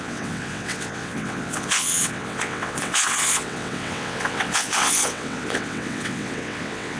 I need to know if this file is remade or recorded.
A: remade